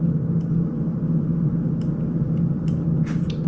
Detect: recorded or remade recorded